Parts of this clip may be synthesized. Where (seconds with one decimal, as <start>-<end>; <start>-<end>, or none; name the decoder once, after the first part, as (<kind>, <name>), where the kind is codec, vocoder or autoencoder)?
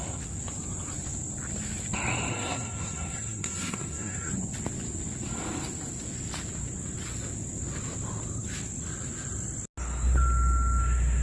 2.3-4.3 (codec, SNAC)